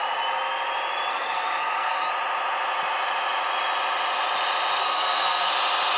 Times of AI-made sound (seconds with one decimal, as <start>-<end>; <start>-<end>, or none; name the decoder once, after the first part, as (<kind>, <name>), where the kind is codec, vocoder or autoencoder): 1.1-2.1 (codec, SNAC); 4.8-5.5